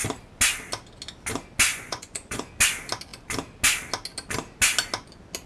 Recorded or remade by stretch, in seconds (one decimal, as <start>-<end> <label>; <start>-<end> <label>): 0.0-1.7 recorded; 1.7-2.5 remade; 2.5-5.5 recorded